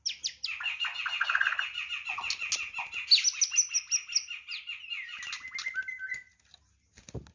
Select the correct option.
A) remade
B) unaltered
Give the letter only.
B